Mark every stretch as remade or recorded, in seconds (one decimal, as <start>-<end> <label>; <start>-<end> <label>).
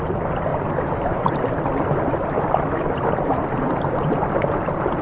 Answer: 0.0-0.5 recorded; 0.5-1.4 remade; 1.4-5.0 recorded